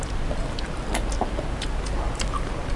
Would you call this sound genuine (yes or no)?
yes